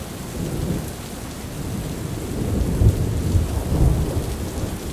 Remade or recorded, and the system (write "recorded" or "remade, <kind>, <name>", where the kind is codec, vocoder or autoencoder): recorded